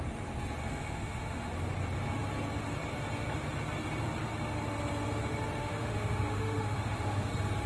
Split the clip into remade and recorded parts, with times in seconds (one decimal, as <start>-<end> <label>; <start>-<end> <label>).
0.0-0.6 recorded; 0.6-1.5 remade; 1.5-5.6 recorded; 5.6-7.3 remade; 7.3-7.7 recorded